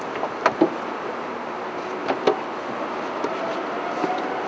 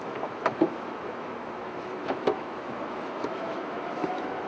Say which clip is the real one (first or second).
first